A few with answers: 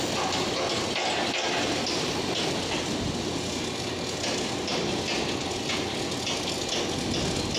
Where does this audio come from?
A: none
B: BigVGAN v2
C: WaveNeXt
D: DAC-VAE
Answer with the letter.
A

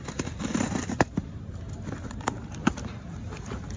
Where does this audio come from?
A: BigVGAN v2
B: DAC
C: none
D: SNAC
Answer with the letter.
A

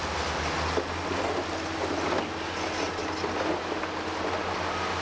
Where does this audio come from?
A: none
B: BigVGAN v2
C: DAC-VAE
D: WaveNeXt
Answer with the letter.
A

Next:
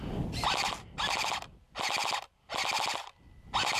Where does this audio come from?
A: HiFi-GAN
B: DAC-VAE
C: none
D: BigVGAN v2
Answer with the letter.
C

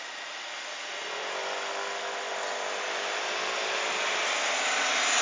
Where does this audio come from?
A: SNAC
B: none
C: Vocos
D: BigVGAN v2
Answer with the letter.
B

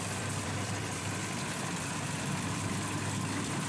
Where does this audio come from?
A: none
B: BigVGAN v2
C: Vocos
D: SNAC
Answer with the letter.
B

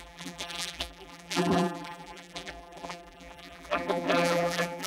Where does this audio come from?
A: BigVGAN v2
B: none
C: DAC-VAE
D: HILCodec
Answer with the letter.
A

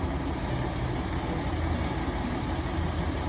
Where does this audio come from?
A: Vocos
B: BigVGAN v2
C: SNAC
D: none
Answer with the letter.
D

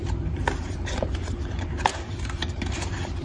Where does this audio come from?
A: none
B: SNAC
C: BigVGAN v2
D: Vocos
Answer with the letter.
C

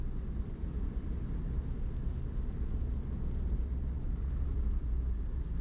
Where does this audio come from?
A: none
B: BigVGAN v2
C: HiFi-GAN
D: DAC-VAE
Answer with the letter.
A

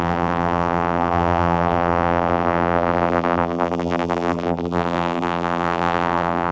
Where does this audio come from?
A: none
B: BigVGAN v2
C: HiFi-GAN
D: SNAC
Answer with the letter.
B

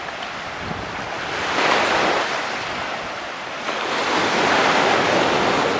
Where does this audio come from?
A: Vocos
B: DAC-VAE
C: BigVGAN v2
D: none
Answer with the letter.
C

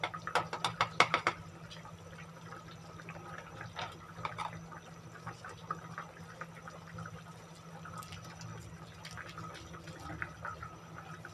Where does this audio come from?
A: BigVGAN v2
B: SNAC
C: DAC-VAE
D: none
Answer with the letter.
D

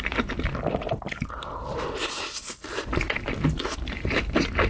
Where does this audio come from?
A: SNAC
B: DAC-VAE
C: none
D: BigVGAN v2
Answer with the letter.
D